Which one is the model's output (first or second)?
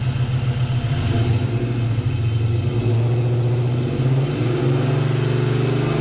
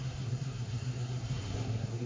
second